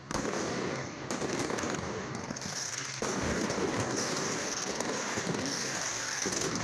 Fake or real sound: fake